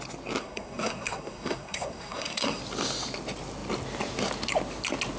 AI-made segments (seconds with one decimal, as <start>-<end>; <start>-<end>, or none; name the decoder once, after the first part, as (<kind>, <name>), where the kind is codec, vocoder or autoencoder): 0.4-2.6 (codec, SNAC)